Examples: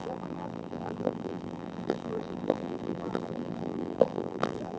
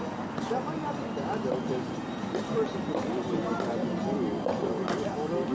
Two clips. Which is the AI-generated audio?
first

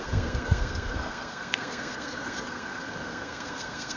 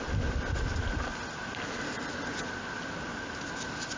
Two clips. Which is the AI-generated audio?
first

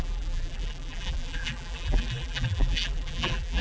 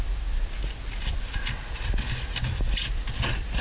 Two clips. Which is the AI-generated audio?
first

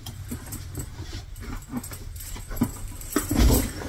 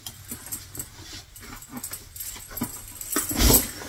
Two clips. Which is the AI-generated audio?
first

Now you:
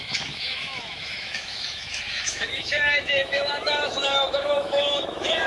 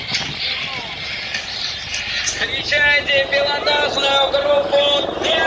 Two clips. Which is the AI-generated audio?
first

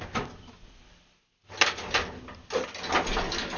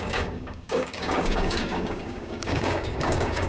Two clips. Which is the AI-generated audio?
second